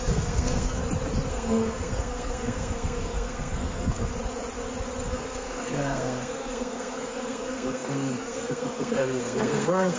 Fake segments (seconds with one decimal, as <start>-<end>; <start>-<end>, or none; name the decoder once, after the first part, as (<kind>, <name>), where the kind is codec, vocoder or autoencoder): 0.0-0.8 (codec, SNAC); 1.3-4.1; 5.1-10.0